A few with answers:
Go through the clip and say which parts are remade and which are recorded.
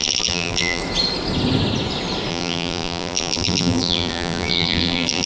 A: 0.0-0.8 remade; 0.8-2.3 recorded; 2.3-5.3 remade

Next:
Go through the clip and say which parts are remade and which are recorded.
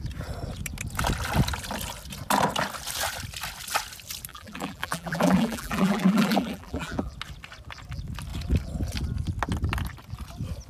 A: 0.0-4.3 recorded; 4.3-7.1 remade; 7.1-10.7 recorded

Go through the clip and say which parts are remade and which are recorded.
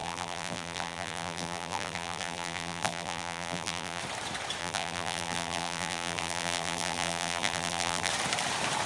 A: 0.0-4.0 remade; 4.0-4.6 recorded; 4.6-8.1 remade; 8.1-8.9 recorded